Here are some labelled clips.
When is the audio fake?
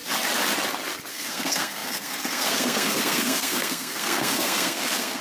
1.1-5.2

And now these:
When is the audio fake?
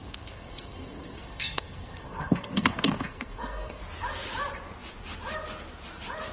0.0-3.8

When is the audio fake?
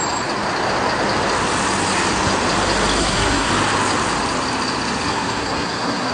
3.0-3.5; 5.1-6.1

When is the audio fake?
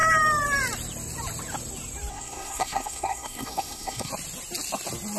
2.1-4.1